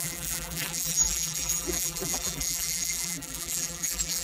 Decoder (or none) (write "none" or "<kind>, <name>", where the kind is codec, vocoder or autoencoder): vocoder, BigVGAN v2